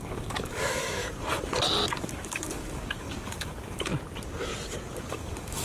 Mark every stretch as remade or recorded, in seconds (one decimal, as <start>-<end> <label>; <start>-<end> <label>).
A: 0.0-1.0 remade; 1.0-1.9 recorded; 1.9-3.9 remade; 3.9-5.1 recorded; 5.1-5.6 remade

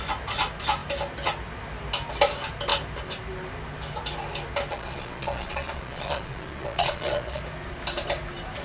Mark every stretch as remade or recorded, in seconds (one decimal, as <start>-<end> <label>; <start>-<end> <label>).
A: 0.0-4.7 recorded; 4.7-7.4 remade; 7.4-8.6 recorded

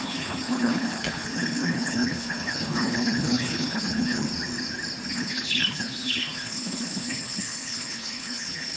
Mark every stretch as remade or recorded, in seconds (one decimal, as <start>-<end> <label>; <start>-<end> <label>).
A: 0.0-4.3 remade; 4.3-5.1 recorded; 5.1-8.8 remade

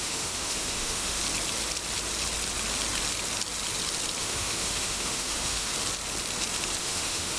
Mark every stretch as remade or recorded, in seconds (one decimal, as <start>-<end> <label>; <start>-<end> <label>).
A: 0.0-1.2 remade; 1.2-4.2 recorded; 4.2-5.7 remade; 5.7-6.8 recorded; 6.8-7.4 remade

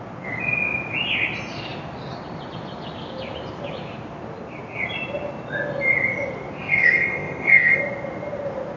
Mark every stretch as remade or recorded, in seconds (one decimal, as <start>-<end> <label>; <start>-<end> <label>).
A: 0.0-6.6 recorded; 6.6-7.8 remade; 7.8-8.8 recorded